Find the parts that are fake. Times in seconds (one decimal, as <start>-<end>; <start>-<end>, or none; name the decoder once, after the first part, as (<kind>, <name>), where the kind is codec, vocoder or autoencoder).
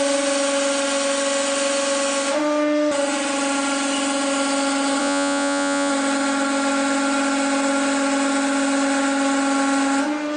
5.0-5.9 (vocoder, Vocos)